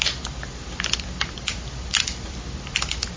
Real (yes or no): no